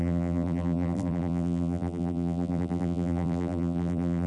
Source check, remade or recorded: remade